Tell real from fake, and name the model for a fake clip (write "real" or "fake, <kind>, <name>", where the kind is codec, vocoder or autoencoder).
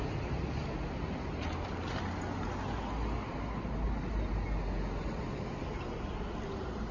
real